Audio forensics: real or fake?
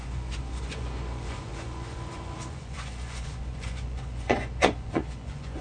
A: fake